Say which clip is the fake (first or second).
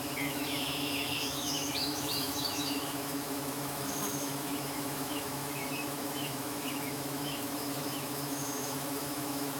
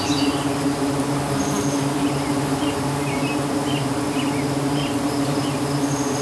first